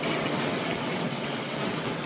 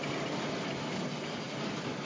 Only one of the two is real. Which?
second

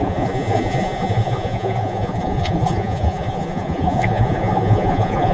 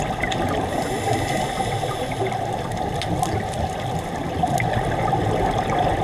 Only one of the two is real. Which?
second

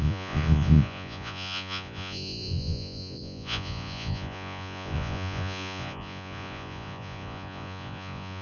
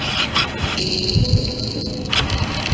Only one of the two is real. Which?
second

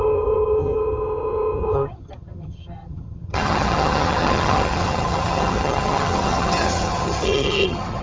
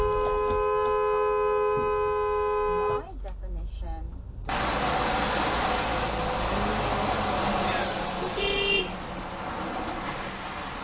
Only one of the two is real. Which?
second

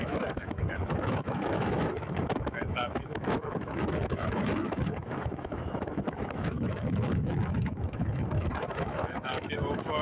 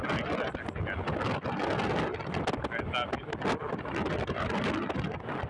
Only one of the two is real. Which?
second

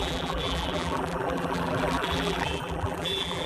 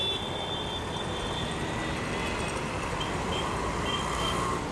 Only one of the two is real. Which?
second